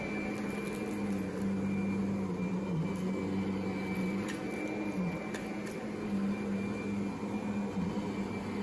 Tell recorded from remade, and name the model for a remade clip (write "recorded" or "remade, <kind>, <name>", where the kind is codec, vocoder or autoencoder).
recorded